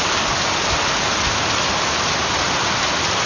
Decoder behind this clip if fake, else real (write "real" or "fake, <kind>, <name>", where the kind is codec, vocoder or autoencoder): real